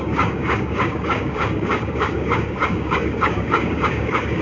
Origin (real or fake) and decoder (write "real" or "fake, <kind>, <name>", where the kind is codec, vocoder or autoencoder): fake, codec, DAC